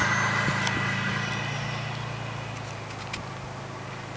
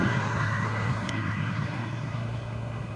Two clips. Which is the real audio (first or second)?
first